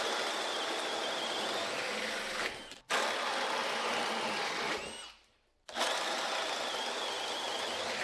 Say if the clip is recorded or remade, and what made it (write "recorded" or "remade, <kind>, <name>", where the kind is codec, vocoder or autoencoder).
recorded